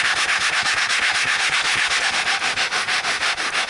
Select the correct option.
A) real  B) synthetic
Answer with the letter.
B